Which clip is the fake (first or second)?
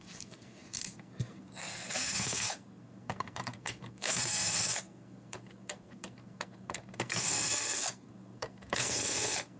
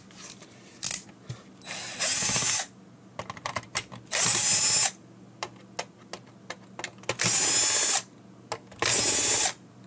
first